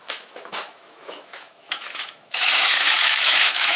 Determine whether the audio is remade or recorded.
remade